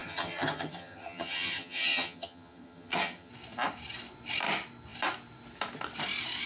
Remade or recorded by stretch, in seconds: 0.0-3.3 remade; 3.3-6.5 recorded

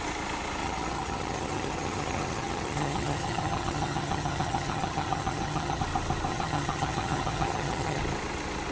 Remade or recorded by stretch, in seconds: 0.0-0.6 recorded; 0.6-5.8 remade; 5.8-6.3 recorded; 6.3-8.0 remade; 8.0-8.7 recorded

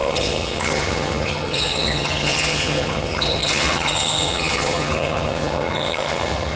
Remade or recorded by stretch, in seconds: 0.0-6.6 remade